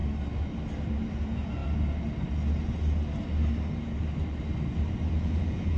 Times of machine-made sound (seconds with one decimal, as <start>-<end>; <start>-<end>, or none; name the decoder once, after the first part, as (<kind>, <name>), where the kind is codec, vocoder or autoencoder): 1.1-1.6 (vocoder, Vocos); 5.1-5.8